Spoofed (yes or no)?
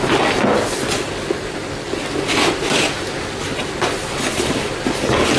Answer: no